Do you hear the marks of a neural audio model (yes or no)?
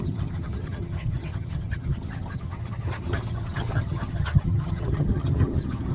yes